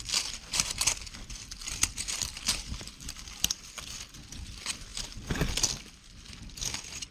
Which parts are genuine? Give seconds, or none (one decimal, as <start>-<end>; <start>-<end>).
0.0-0.5; 1.1-1.6; 3.5-7.1

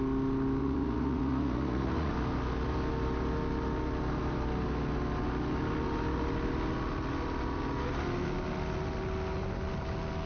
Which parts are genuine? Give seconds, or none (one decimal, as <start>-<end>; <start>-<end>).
0.0-0.6; 2.1-10.3

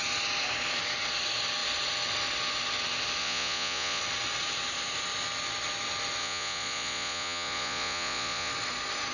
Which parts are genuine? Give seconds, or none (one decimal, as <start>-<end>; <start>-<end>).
0.0-3.2; 4.0-6.2; 8.5-9.1

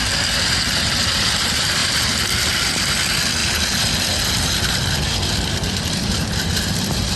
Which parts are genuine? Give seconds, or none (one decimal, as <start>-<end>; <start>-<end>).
3.4-5.8

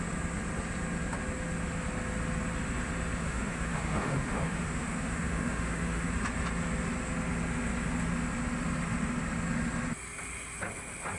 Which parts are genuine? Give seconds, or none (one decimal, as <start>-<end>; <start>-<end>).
0.0-3.2; 6.1-11.2